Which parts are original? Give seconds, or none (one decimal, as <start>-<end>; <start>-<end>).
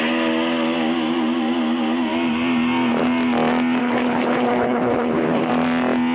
0.0-3.8; 5.5-6.1